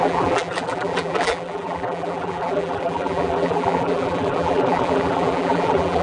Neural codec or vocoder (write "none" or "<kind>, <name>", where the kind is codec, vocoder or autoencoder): vocoder, BigVGAN v2